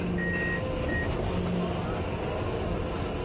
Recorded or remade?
recorded